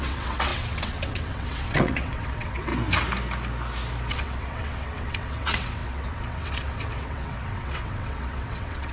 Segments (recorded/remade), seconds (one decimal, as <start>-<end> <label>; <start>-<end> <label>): 0.0-2.7 remade; 2.7-4.1 recorded; 4.1-8.9 remade